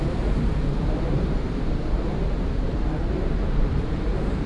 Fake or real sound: fake